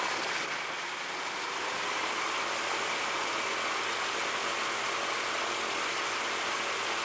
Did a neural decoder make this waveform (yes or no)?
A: no